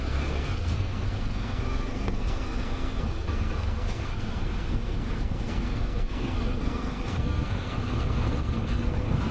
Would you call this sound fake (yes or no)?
yes